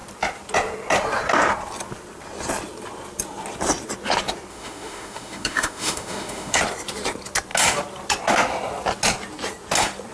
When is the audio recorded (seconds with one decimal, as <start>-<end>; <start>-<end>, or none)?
0.0-4.5; 6.6-10.1